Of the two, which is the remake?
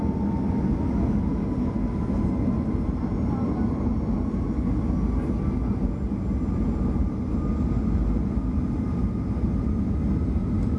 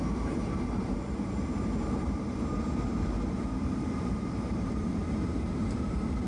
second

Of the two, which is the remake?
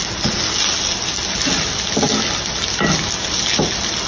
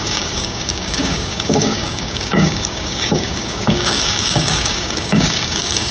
second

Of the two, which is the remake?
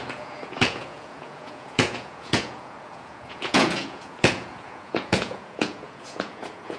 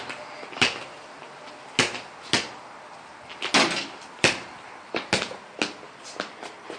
first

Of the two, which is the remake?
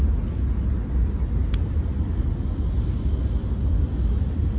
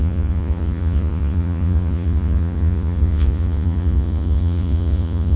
second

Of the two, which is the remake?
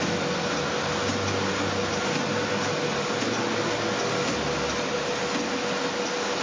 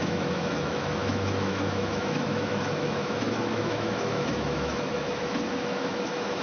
second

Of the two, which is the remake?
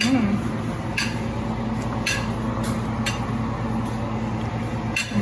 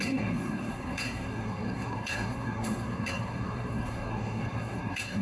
second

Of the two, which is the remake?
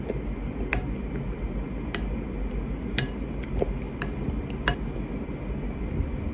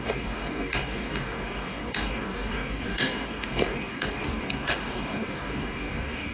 second